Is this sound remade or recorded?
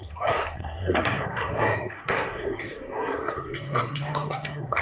remade